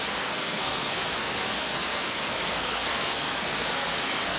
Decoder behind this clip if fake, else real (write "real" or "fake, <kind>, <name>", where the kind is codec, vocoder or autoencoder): fake, codec, SNAC